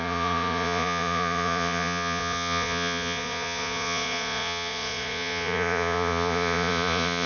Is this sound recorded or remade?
remade